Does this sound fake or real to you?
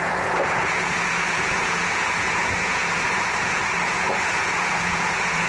fake